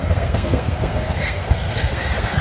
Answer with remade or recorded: remade